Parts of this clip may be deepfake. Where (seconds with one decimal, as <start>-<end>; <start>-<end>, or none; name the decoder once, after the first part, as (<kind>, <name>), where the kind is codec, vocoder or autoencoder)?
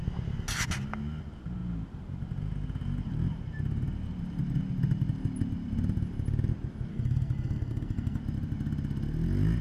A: 6.9-8.2 (codec, SNAC)